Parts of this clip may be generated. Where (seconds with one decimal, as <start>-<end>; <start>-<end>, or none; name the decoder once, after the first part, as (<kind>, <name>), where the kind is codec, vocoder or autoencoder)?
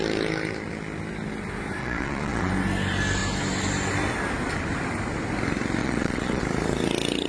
1.8-2.5 (vocoder, Vocos); 5.8-6.4